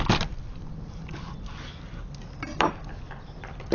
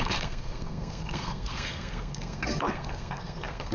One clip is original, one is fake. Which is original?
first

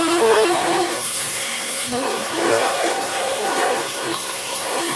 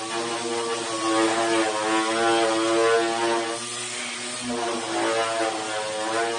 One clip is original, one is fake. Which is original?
second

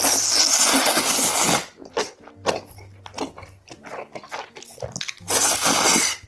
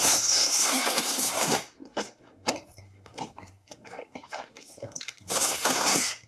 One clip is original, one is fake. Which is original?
first